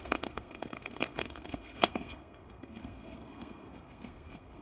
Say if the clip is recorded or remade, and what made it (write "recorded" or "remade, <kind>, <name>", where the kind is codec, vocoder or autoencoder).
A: remade, codec, SNAC